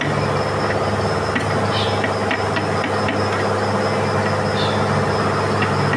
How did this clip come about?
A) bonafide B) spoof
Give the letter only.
A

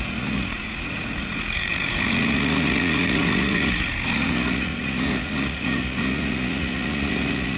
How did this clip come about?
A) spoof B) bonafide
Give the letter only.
A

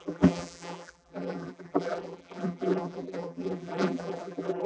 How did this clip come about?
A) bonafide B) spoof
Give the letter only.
B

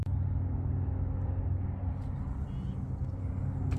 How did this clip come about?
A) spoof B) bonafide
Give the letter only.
B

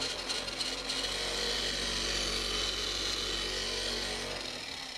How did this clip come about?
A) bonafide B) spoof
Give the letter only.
A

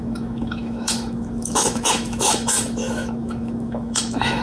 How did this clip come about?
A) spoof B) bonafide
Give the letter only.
A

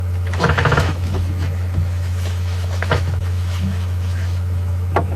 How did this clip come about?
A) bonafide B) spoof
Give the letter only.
B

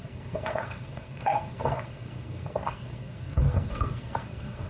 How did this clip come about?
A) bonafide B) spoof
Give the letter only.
B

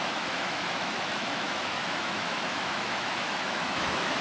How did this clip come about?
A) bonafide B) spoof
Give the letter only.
B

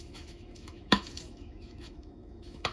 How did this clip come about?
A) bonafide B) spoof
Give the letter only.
B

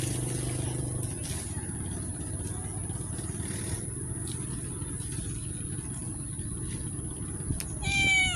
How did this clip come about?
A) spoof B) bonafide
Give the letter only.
B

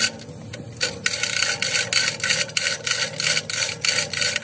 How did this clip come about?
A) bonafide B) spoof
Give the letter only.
A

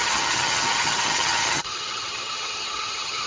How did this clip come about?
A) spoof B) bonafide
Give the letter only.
A